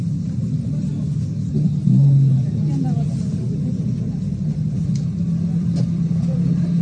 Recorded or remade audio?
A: recorded